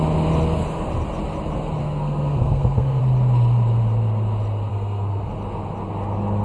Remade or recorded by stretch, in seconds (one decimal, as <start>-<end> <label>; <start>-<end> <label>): 0.0-1.8 recorded; 1.8-3.0 remade; 3.0-4.7 recorded; 4.7-5.3 remade; 5.3-6.4 recorded